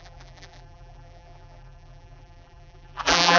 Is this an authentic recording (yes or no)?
no